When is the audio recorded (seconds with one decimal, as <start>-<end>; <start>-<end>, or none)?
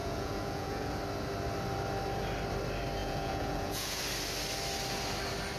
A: 1.0-3.0; 4.0-5.6